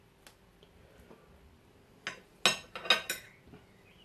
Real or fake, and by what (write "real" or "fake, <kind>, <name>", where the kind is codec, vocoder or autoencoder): real